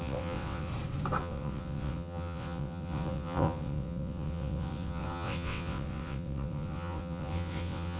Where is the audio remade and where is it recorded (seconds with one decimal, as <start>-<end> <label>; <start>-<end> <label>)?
0.0-0.7 remade; 0.7-1.2 recorded; 1.2-8.0 remade